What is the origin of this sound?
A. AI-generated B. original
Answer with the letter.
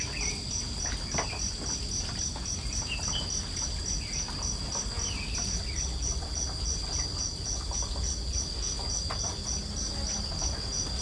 B